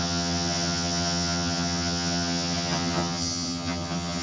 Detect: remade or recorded remade